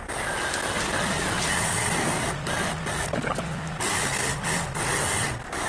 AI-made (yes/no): no